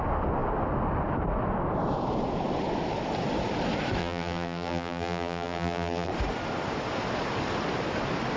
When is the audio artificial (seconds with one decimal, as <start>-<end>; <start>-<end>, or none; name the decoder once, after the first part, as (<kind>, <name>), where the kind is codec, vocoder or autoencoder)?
4.0-6.1 (vocoder, BigVGAN v2)